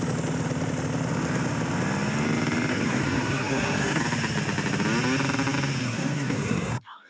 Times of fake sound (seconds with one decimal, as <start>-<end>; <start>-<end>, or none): 2.7-4.0; 5.8-7.1